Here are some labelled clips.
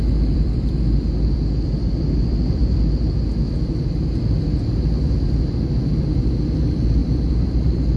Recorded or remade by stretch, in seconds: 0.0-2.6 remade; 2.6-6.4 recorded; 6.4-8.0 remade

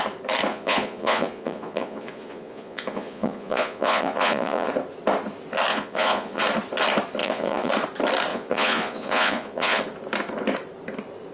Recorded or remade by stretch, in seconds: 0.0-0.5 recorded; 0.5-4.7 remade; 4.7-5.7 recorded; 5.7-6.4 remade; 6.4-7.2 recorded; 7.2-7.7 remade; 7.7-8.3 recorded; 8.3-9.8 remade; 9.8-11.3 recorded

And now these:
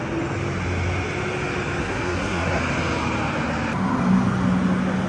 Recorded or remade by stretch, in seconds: 0.0-1.8 recorded; 1.8-2.6 remade; 2.6-5.1 recorded

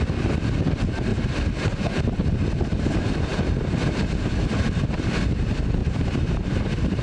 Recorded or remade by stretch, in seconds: 0.0-5.8 recorded; 5.8-7.0 remade

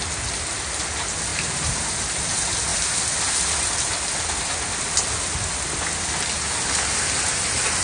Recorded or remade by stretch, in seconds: 0.0-1.3 recorded; 1.3-2.0 remade; 2.0-7.8 recorded

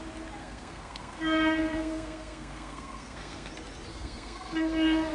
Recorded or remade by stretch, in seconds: 0.0-0.4 recorded; 0.4-3.5 remade; 3.5-3.9 recorded; 3.9-5.1 remade